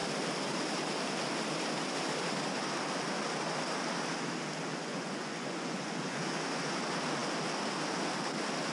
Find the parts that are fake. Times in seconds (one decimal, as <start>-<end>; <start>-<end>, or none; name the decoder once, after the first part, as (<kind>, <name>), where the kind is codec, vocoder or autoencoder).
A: 4.7-6.7 (vocoder, Vocos)